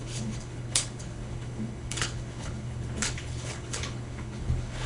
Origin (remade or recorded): remade